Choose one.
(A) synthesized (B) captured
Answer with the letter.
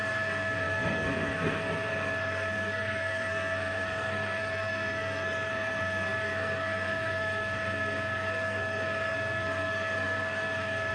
A